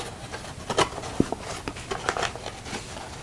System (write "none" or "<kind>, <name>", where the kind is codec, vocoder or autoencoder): none